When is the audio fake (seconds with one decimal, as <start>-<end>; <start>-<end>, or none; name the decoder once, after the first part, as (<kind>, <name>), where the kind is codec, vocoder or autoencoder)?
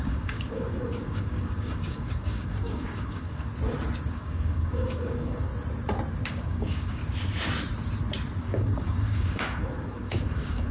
0.0-3.5 (codec, DAC); 4.1-5.5; 6.3-7.0; 8.4-10.7